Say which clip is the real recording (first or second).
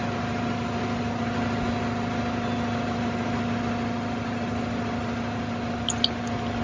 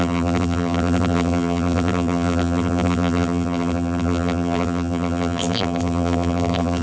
first